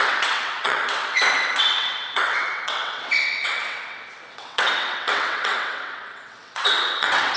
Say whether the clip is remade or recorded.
remade